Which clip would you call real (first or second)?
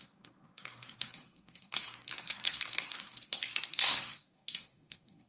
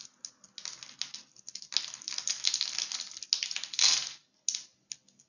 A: second